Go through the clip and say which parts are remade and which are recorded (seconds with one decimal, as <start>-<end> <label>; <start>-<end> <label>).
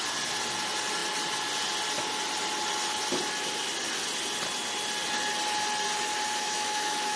0.0-6.4 recorded; 6.4-7.2 remade